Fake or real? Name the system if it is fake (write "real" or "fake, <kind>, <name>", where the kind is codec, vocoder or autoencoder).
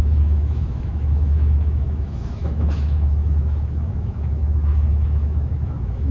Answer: fake, autoencoder, DAC-VAE